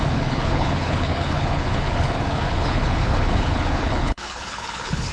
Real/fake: fake